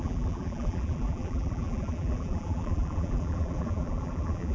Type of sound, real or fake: fake